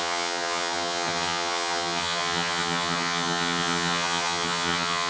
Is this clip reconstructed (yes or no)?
yes